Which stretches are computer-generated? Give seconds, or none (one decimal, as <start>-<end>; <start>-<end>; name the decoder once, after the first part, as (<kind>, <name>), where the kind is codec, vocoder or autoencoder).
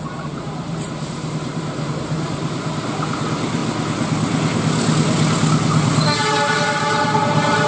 0.0-3.6 (vocoder, BigVGAN v2); 6.3-7.7